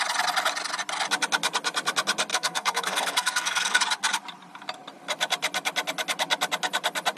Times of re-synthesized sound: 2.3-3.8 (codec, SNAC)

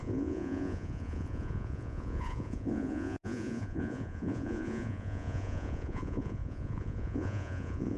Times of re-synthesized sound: 0.0-8.0 (vocoder, Vocos)

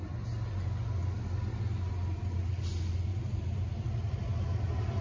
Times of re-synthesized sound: 3.1-5.0 (vocoder, BigVGAN v2)